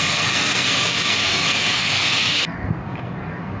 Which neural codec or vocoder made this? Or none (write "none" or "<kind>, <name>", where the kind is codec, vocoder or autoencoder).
codec, SNAC